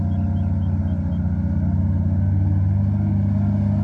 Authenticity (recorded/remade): recorded